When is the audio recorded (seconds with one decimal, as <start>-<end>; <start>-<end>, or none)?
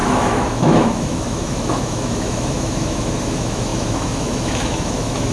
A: none